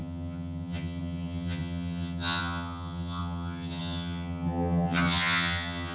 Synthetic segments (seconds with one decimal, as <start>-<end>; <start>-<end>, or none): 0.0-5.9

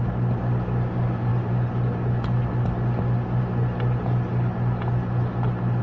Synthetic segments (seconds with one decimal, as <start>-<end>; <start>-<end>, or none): none

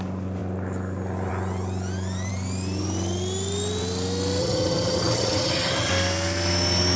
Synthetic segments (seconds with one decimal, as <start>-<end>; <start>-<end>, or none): 4.4-5.9

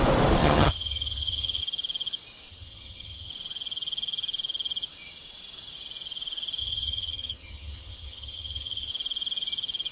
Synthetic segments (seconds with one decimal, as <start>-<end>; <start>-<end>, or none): 0.4-1.6; 2.5-3.3; 6.6-8.9

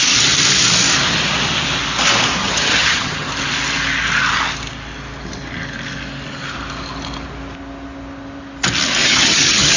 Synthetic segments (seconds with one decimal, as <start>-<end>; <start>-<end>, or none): 2.4-3.3; 9.0-9.8

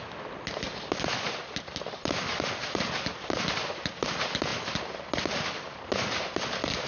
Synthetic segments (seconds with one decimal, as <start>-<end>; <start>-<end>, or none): none

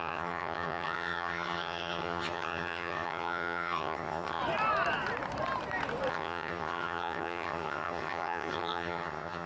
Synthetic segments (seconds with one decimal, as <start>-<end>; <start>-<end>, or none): 0.0-4.4; 6.1-9.5

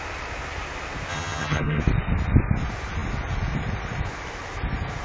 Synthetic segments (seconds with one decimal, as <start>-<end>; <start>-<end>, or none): 1.1-1.8